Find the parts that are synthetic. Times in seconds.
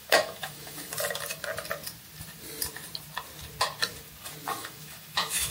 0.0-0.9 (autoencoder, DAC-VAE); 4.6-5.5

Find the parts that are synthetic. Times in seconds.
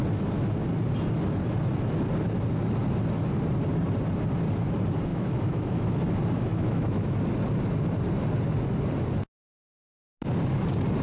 5.1-5.9 (autoencoder, DAC-VAE); 6.5-7.2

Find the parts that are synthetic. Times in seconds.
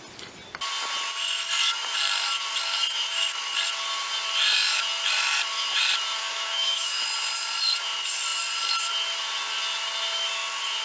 6.2-7.0 (autoencoder, DAC-VAE)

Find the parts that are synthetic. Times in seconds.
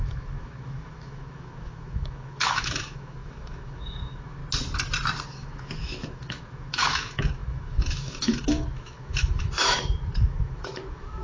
0.0-4.4 (autoencoder, DAC-VAE); 5.2-11.2